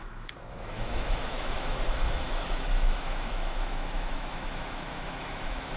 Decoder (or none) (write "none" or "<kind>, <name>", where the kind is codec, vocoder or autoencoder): autoencoder, DAC-VAE